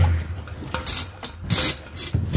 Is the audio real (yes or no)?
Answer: yes